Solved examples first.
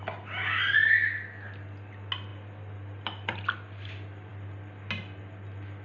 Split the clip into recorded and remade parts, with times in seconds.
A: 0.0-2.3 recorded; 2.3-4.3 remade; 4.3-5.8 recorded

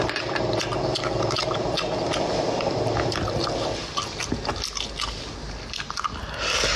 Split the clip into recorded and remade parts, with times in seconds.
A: 0.0-6.8 recorded